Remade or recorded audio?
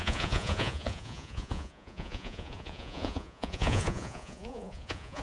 remade